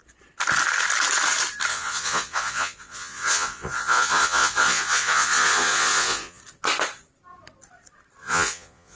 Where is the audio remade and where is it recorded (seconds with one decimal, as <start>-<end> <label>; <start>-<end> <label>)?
0.0-1.7 recorded; 1.7-6.4 remade; 6.4-8.2 recorded; 8.2-9.0 remade